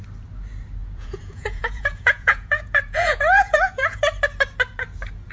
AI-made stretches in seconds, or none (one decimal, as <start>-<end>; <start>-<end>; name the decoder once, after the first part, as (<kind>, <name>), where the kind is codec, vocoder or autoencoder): 0.8-4.0 (vocoder, Vocos)

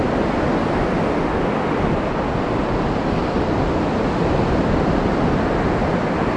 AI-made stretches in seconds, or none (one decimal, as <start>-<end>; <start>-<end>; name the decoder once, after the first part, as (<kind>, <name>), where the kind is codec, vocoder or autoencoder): none

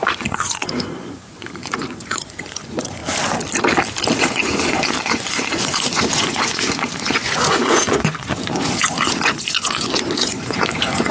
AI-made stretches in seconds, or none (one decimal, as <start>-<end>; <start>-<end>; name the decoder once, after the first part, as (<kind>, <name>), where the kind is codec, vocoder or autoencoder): 0.0-3.0 (vocoder, Vocos); 4.2-11.1